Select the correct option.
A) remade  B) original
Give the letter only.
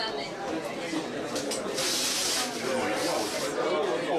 B